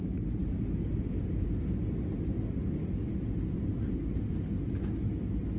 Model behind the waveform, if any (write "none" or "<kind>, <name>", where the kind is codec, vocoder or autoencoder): none